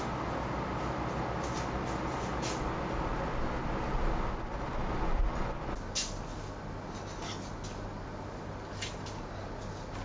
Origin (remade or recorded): recorded